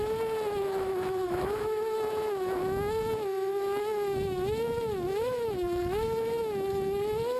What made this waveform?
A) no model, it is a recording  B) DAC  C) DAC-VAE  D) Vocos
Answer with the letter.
C